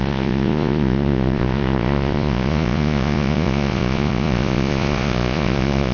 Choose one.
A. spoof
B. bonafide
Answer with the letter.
A